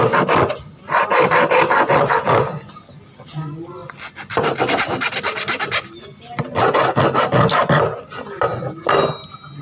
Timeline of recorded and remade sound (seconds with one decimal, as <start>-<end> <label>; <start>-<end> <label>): 0.0-9.6 recorded